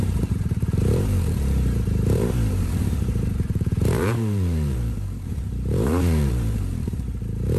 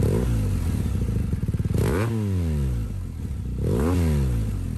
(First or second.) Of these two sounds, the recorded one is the second